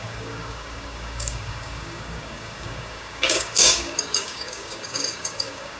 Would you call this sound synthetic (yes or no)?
yes